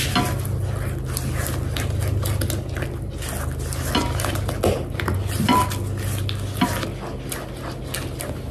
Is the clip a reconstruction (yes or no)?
no